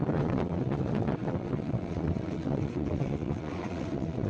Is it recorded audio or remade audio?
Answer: remade